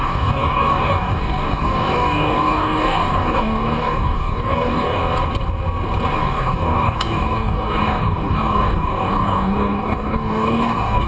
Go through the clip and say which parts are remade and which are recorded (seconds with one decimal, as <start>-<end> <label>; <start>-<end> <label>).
0.0-5.0 remade; 5.0-6.2 recorded; 6.2-11.1 remade